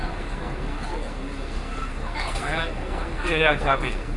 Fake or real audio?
fake